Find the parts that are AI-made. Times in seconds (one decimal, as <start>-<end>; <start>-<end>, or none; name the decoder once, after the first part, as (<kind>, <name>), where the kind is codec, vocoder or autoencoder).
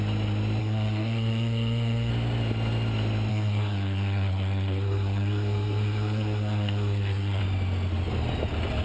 0.6-2.1 (codec, SNAC); 3.3-7.4